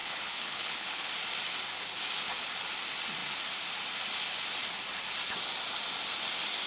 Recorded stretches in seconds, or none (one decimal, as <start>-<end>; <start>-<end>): 1.0-6.7